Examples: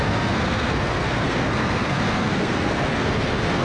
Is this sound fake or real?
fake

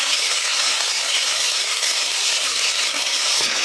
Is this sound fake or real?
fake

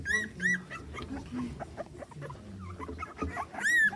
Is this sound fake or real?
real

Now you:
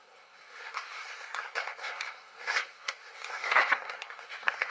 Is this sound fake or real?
fake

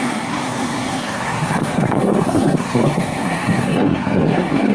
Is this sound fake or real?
fake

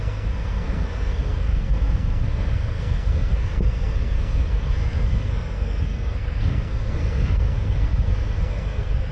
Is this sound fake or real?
fake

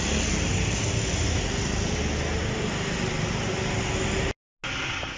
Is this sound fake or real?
real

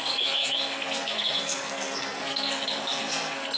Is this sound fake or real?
fake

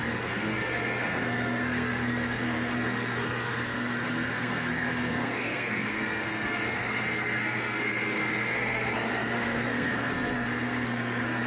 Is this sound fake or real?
fake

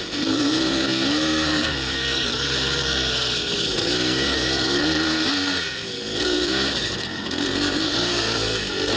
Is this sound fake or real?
fake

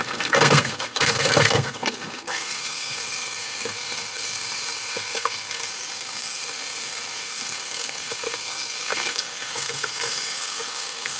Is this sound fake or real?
fake